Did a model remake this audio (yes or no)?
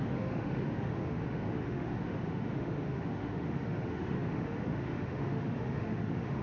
yes